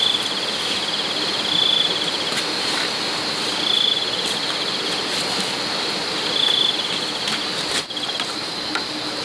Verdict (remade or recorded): recorded